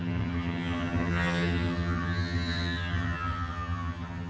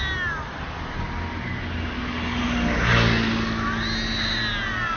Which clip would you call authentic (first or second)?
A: second